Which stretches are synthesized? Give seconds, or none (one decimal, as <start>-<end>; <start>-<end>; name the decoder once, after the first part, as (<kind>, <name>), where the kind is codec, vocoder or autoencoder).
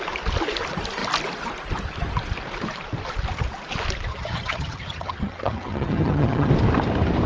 4.1-6.5 (vocoder, HiFi-GAN)